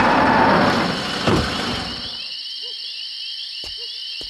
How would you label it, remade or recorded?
recorded